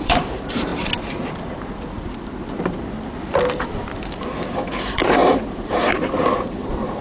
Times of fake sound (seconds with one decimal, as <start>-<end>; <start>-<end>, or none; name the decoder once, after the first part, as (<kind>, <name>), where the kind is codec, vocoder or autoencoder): 0.0-0.7 (vocoder, BigVGAN v2); 4.0-7.0